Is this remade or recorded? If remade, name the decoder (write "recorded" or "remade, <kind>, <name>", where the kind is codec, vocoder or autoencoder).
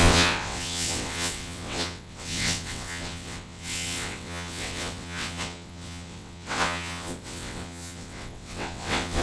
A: remade, vocoder, WaveNeXt